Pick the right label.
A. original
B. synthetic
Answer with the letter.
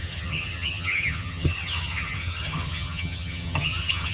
B